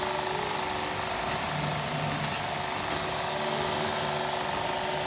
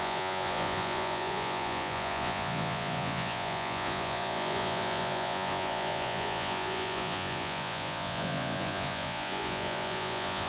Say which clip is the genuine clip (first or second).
first